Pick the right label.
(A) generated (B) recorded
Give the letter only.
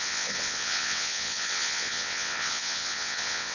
A